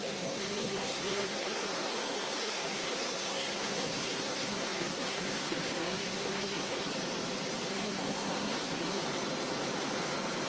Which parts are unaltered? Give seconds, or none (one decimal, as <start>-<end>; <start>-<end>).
6.9-7.7; 9.0-10.5